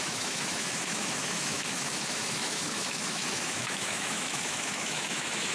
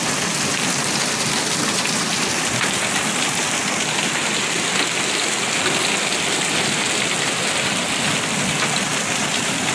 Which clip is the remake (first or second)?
first